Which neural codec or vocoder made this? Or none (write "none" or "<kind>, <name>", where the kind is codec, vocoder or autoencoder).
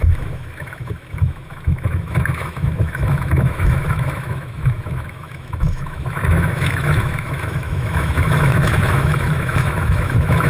autoencoder, DAC-VAE